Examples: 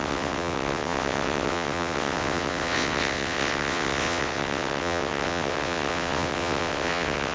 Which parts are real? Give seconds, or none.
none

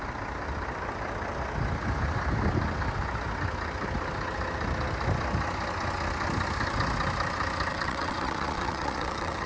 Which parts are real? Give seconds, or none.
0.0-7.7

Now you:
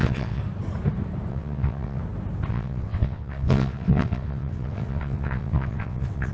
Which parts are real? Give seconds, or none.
0.4-1.3; 2.0-2.5

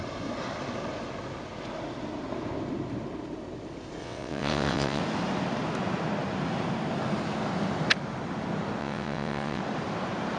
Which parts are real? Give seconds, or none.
0.0-4.0; 5.0-8.8; 9.6-10.4